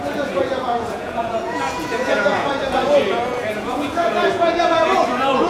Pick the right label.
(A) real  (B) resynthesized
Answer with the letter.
B